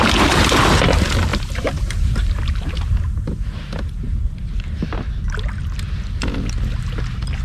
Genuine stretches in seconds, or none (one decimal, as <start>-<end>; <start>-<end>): 0.0-1.3; 4.4-7.4